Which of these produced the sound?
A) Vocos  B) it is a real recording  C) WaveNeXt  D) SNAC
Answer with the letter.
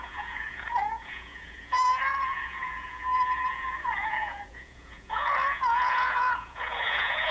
A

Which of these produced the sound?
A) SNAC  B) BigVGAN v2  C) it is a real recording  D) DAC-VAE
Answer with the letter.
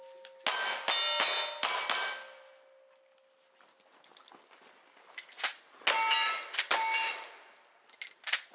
C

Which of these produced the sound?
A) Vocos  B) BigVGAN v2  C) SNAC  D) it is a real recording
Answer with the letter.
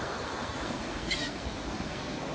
C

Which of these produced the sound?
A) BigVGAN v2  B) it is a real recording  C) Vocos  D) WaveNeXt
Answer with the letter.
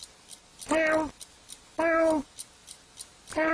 B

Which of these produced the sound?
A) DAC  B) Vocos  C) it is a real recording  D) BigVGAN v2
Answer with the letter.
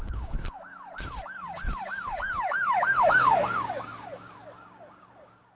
A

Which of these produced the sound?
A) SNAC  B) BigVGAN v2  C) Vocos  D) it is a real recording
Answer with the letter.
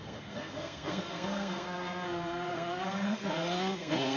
A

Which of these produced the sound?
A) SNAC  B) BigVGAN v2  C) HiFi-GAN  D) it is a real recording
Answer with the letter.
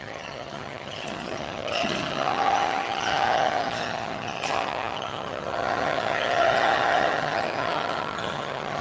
C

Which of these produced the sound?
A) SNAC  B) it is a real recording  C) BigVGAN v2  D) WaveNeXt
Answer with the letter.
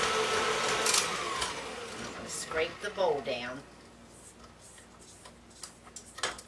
B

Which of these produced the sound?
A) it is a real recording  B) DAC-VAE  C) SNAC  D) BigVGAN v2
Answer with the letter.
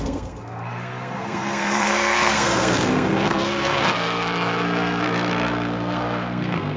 C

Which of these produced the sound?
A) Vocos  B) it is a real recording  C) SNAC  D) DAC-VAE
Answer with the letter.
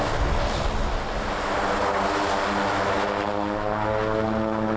B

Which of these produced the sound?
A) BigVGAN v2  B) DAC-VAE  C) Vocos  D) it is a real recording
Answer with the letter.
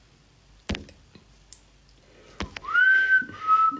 D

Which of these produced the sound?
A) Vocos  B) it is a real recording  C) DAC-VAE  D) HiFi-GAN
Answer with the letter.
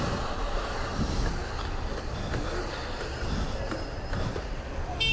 B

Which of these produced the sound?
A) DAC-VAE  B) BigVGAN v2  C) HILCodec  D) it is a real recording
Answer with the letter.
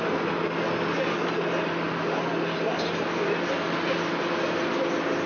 D